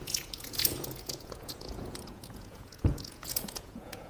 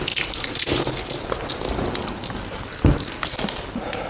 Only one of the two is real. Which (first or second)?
second